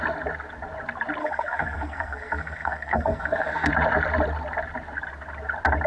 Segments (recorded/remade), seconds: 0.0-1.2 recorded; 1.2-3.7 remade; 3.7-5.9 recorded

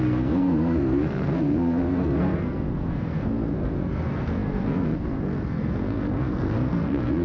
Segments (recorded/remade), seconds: 0.0-7.2 remade

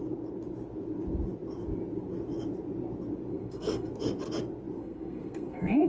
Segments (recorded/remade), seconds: 0.0-3.3 recorded; 3.3-3.9 remade; 3.9-4.8 recorded; 4.8-5.9 remade

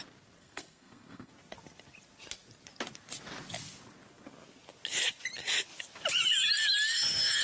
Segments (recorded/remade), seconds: 0.0-0.4 recorded; 0.4-1.3 remade; 1.3-7.4 recorded

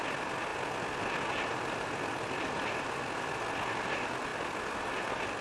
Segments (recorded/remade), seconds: 0.0-5.4 recorded